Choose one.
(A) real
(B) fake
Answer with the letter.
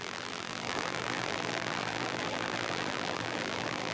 B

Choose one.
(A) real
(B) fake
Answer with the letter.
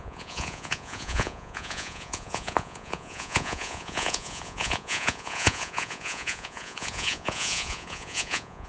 B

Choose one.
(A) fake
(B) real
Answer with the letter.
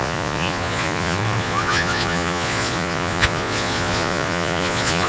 A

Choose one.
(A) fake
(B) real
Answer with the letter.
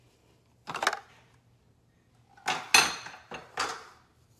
B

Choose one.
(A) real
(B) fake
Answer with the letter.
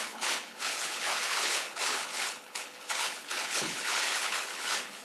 B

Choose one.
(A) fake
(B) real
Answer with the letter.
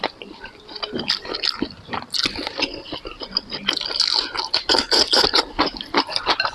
B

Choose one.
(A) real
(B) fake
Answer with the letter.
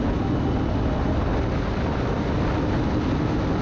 A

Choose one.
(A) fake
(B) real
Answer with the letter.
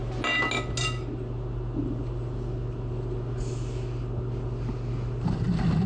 B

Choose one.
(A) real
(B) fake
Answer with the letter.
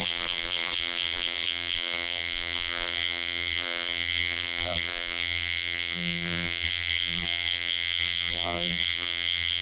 B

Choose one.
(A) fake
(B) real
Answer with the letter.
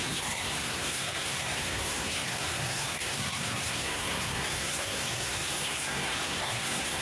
A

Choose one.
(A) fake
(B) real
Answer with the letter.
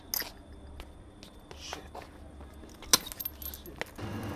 B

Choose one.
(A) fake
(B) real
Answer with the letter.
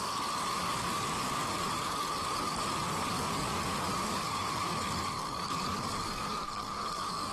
A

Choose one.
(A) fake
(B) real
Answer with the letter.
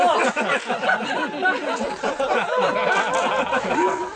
B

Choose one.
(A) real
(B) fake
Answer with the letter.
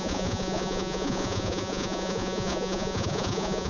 B